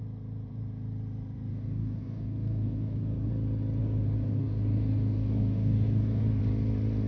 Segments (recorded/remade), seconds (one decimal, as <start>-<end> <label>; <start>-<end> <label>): 0.0-1.5 recorded; 1.5-3.3 remade; 3.3-3.8 recorded; 3.8-6.4 remade; 6.4-7.1 recorded